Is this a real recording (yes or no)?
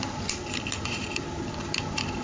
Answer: yes